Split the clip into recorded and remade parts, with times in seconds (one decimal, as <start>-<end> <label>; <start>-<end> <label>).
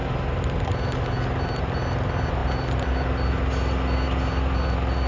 0.0-5.1 recorded